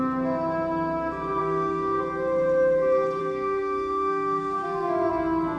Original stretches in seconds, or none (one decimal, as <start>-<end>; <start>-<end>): 0.0-1.4; 2.0-3.2; 5.1-5.6